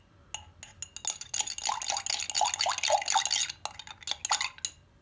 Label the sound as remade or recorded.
recorded